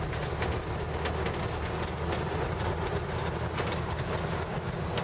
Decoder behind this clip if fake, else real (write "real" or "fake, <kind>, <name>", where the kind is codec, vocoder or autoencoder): real